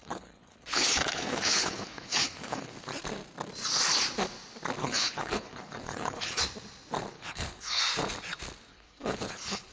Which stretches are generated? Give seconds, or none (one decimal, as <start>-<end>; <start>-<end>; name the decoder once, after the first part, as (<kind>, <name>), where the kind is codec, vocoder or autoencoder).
0.0-2.7 (codec, HILCodec); 4.8-6.4; 7.1-7.8; 8.7-9.7